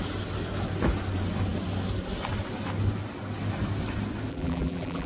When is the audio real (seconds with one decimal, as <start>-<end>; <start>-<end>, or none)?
0.0-4.3

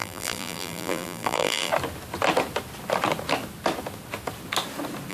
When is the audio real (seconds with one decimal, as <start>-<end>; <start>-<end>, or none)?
1.7-5.1